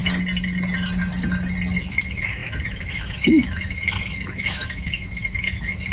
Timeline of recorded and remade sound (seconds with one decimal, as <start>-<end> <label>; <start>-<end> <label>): 0.0-1.8 recorded; 1.8-5.9 remade